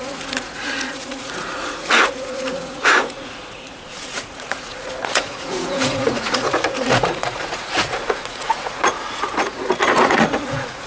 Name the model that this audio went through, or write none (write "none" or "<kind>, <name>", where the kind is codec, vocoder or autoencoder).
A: vocoder, Vocos